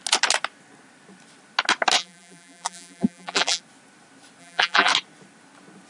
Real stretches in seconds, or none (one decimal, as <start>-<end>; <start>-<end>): 0.0-2.0; 3.6-4.4; 4.9-5.9